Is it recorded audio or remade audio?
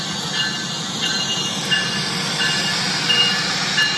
recorded